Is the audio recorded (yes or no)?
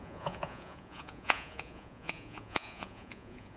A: no